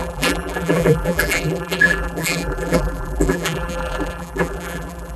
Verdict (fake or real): fake